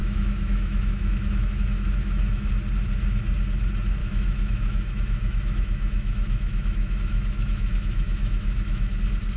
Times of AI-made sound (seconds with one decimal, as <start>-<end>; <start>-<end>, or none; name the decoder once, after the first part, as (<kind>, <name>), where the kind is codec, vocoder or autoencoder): 0.0-2.5 (autoencoder, DAC-VAE); 4.0-9.0